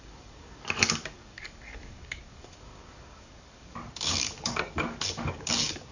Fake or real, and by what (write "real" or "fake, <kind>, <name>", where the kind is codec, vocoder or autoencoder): fake, codec, DAC